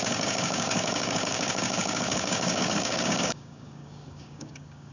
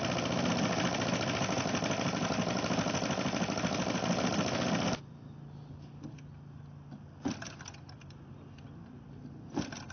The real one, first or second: second